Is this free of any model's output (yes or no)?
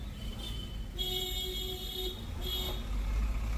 yes